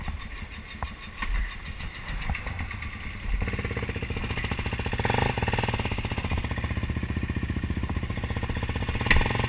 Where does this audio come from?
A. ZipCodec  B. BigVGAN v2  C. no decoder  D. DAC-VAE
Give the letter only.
C